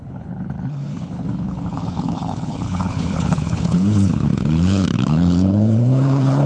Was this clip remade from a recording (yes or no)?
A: yes